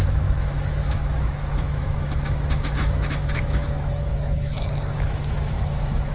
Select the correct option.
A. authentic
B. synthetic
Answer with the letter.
B